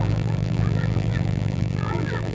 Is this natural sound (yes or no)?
no